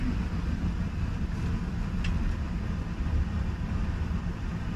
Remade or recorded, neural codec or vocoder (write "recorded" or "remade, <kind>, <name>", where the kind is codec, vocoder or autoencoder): recorded